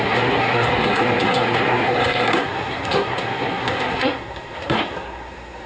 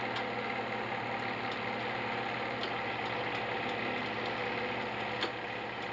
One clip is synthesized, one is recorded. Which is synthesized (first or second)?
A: first